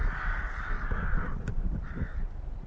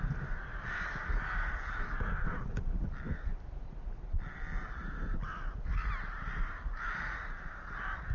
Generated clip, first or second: first